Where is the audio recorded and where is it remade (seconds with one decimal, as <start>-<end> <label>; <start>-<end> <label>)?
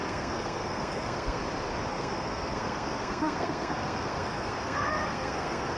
0.0-1.4 remade; 1.4-1.9 recorded; 1.9-5.8 remade